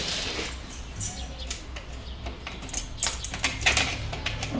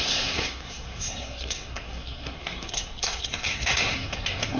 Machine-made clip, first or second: second